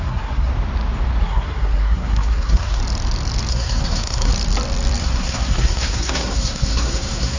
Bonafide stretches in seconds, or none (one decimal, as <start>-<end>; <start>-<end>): 0.5-1.2; 2.8-3.5; 4.3-5.0